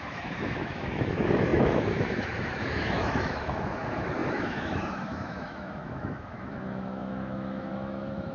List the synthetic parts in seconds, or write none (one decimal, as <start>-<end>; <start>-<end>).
0.0-8.3

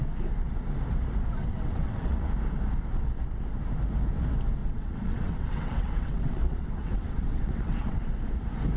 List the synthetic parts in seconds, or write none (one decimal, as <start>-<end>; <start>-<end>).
1.4-2.3; 4.6-8.0

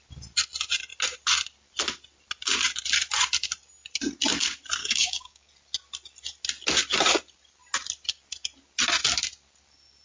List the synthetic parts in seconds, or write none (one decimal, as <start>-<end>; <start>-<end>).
4.8-5.5

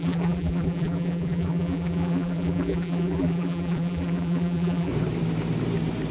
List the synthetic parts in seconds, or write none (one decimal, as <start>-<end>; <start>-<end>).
0.0-4.9

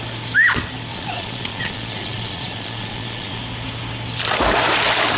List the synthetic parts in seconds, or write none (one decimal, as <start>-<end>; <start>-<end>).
0.9-3.4